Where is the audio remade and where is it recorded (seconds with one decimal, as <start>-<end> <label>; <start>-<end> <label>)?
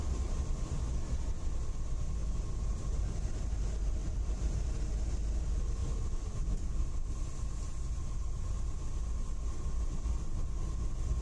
0.0-4.0 recorded; 4.0-4.7 remade; 4.7-5.8 recorded; 5.8-6.7 remade; 6.7-11.2 recorded